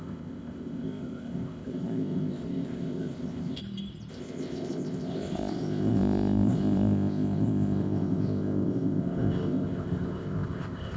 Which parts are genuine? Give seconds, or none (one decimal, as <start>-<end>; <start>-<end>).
3.6-4.1